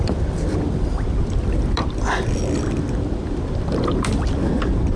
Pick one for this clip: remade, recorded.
remade